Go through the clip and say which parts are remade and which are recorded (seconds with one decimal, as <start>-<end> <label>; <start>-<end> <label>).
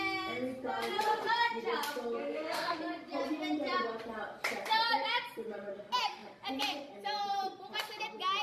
0.0-2.2 recorded; 2.2-2.8 remade; 2.8-8.4 recorded